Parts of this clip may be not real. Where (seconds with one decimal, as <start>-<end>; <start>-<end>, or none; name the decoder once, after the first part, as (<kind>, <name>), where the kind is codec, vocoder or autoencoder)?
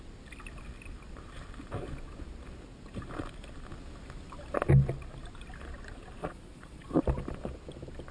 6.2-7.0 (vocoder, Vocos)